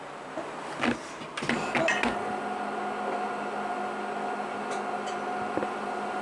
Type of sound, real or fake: real